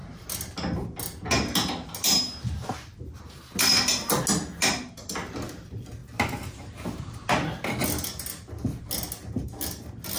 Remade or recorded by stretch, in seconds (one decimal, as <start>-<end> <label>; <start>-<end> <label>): 0.0-10.2 recorded